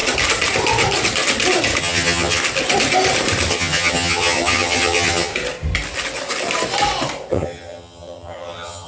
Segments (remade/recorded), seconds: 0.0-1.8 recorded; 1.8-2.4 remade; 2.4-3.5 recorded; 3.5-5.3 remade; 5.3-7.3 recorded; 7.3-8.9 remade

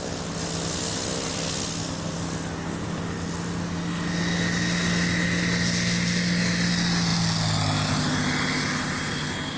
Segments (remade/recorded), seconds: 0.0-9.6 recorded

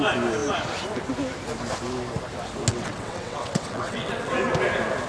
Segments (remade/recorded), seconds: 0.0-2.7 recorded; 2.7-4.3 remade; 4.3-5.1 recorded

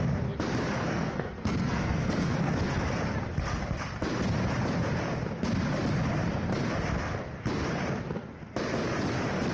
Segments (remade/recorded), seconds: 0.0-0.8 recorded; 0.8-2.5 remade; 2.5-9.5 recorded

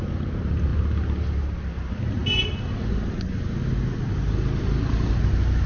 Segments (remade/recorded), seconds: 0.0-5.7 recorded

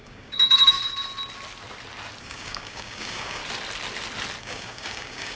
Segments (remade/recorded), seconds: 0.0-0.8 remade; 0.8-2.2 recorded; 2.2-3.4 remade; 3.4-4.4 recorded; 4.4-5.3 remade

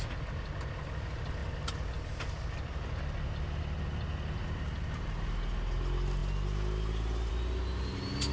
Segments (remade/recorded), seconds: 0.0-8.3 recorded